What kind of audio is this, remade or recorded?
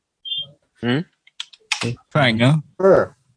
recorded